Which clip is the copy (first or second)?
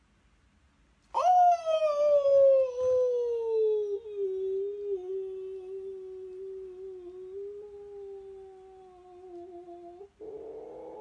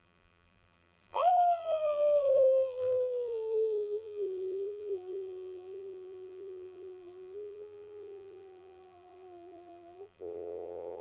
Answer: second